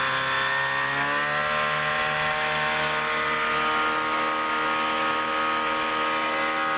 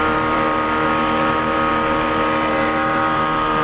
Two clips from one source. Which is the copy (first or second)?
second